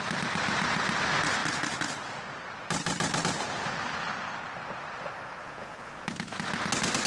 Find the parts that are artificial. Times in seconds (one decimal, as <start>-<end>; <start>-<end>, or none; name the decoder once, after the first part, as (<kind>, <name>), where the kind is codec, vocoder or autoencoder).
5.4-5.9 (vocoder, Vocos)